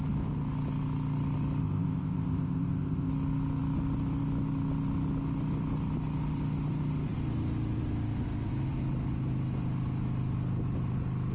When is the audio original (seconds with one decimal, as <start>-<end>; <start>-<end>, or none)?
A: 0.0-1.6; 3.1-11.3